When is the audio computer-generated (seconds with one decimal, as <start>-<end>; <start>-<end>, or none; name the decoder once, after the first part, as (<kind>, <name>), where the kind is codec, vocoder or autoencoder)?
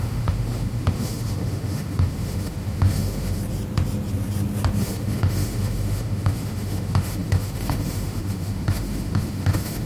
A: 0.0-3.4 (autoencoder, DAC-VAE); 4.8-9.9